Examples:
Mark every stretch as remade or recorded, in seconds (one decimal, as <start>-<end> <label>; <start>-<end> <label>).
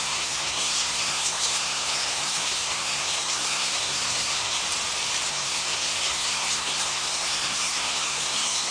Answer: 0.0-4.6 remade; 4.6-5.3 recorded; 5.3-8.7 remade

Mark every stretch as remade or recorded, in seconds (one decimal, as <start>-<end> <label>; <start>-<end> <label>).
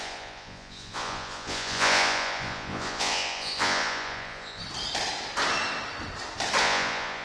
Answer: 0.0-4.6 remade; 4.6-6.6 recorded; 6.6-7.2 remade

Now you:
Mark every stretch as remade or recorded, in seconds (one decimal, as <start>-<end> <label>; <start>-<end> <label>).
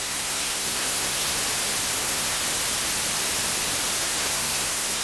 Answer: 0.0-1.4 remade; 1.4-2.0 recorded; 2.0-2.4 remade; 2.4-4.0 recorded; 4.0-5.0 remade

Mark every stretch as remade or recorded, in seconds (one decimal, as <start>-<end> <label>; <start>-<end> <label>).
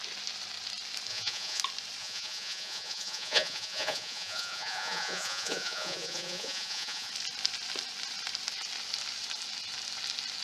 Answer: 0.0-1.1 recorded; 1.1-1.6 remade; 1.6-2.0 recorded; 2.0-7.1 remade; 7.1-10.4 recorded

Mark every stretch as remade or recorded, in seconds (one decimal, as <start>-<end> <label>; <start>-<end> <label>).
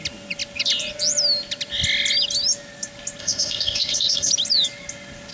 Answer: 0.0-3.2 recorded; 3.2-4.3 remade; 4.3-5.3 recorded